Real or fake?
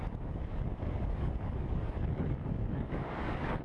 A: fake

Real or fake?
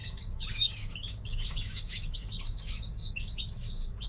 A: fake